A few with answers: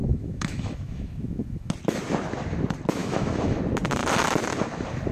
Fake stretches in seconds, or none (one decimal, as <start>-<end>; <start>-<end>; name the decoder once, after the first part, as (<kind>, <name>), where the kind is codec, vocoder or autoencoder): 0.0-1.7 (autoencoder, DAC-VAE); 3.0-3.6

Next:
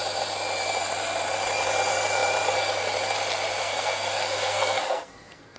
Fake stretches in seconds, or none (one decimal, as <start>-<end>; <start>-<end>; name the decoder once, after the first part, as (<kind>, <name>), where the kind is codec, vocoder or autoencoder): 3.6-5.6 (codec, SNAC)

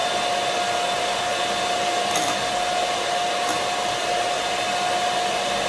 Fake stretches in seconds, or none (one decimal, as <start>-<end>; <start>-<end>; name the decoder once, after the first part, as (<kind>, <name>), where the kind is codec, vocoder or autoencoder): none

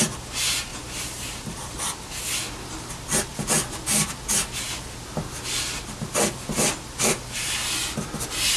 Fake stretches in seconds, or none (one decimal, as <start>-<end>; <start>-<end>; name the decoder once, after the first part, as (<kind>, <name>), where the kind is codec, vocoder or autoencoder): 0.7-1.8 (vocoder, BigVGAN v2)

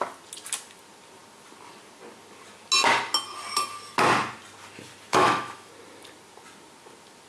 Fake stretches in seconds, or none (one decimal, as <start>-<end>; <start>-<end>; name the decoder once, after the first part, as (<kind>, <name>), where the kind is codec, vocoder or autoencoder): 5.1-5.7 (autoencoder, DAC-VAE)